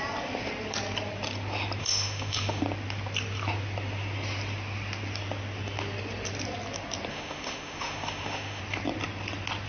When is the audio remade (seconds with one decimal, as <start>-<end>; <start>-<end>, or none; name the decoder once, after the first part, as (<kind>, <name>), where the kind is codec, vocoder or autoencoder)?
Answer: 1.8-2.6 (autoencoder, DAC-VAE); 7.1-8.6